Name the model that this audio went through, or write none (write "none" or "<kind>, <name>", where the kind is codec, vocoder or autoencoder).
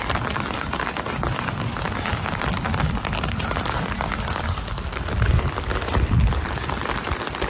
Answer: none